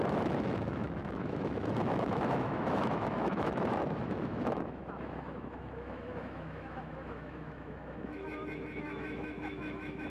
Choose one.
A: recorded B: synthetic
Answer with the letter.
B